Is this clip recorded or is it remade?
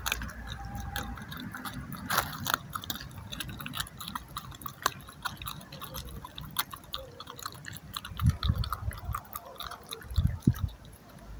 recorded